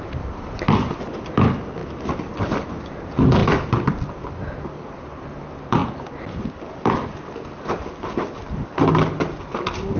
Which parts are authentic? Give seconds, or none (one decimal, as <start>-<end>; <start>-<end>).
0.0-10.0